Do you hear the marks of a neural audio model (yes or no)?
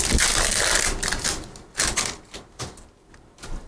no